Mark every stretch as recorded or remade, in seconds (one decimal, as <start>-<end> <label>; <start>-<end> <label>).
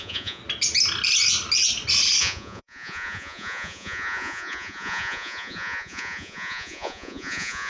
0.0-0.4 remade; 0.4-2.2 recorded; 2.2-7.7 remade